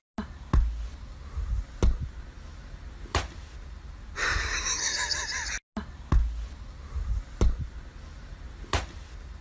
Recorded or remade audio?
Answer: recorded